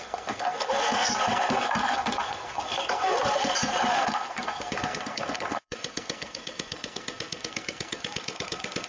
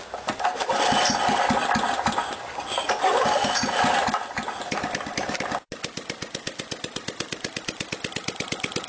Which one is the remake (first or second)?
first